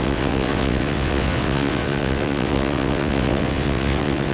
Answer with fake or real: fake